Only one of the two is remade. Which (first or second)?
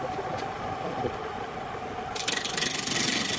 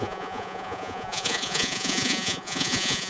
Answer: second